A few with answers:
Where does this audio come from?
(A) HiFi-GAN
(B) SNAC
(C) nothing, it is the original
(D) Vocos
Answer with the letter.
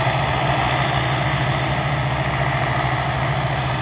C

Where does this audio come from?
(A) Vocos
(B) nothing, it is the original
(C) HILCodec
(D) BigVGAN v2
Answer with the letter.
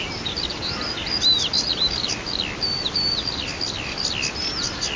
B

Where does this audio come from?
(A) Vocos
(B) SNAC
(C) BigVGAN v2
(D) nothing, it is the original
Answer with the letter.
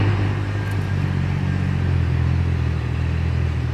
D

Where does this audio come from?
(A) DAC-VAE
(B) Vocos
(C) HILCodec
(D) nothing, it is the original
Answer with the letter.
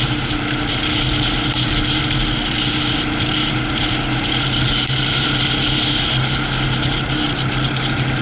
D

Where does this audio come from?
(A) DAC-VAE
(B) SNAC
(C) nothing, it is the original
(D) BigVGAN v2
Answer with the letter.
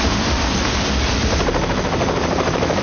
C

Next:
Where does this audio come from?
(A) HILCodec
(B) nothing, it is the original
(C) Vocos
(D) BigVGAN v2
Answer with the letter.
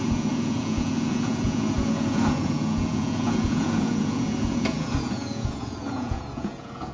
C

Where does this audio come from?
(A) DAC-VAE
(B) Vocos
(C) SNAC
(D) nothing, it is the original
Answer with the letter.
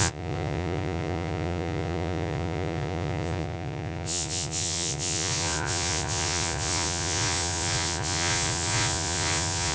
B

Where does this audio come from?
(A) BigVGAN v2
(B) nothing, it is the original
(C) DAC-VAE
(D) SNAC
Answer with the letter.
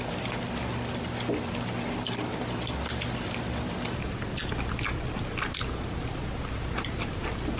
B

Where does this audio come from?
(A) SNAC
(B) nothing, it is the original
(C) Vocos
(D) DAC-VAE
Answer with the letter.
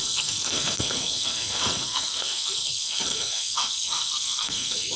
A